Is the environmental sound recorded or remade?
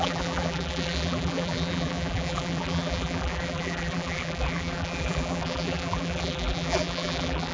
remade